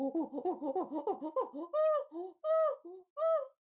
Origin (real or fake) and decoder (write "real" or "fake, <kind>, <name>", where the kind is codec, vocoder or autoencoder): real